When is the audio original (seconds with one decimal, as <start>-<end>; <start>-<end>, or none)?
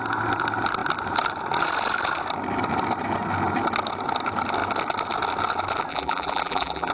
0.0-5.9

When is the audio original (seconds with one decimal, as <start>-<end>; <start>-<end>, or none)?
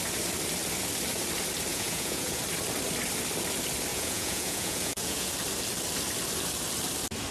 0.0-1.7; 2.4-3.9; 5.3-7.3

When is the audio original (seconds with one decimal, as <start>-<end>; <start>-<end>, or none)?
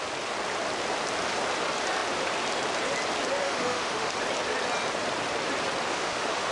0.0-3.4; 4.1-5.9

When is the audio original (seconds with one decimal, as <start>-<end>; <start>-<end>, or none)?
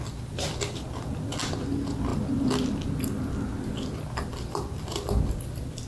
0.0-5.9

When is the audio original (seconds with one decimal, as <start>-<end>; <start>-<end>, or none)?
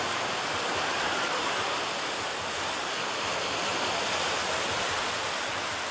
0.0-5.9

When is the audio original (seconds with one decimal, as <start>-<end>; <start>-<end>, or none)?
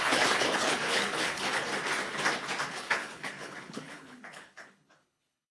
1.7-2.7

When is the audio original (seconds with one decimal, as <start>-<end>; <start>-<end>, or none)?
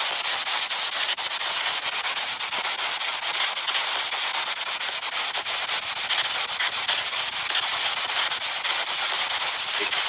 0.0-10.1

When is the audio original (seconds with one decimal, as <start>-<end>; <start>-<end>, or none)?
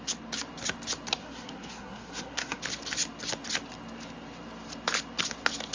0.0-1.2; 2.6-5.7